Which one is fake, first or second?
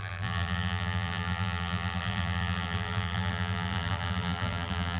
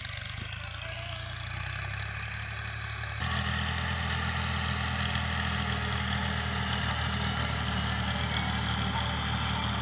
first